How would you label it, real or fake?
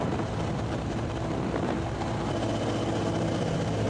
fake